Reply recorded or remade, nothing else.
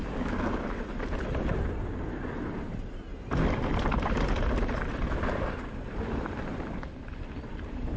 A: recorded